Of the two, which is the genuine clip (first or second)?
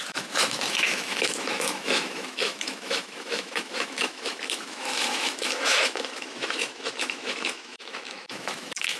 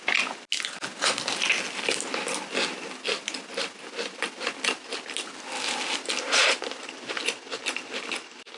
second